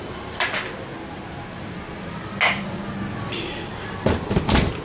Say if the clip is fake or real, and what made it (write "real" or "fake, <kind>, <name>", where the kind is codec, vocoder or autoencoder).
real